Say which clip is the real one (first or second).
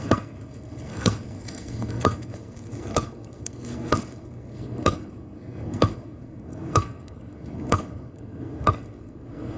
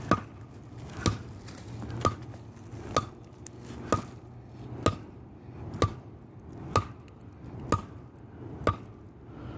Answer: second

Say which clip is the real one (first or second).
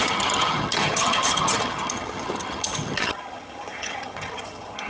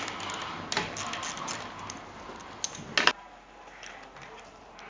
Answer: second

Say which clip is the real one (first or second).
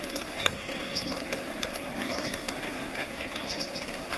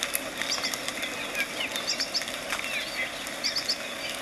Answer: second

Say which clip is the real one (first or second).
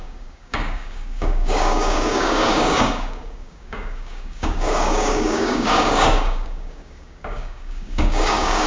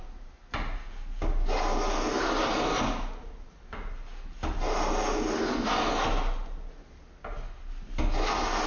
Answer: second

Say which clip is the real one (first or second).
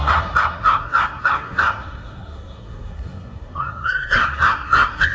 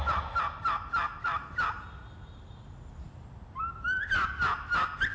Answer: second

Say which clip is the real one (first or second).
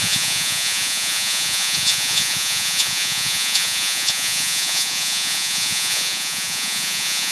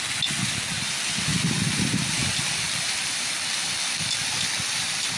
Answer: second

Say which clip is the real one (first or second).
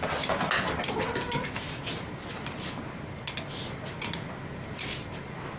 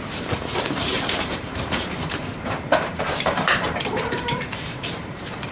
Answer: first